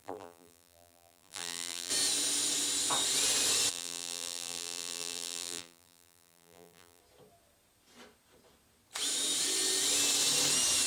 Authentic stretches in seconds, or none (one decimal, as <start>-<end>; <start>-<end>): 1.9-3.7; 7.0-10.9